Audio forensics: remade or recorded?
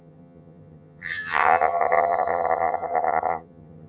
remade